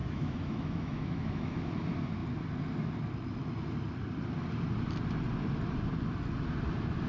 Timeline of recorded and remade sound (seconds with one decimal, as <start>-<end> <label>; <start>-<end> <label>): 0.0-1.7 remade; 1.7-7.1 recorded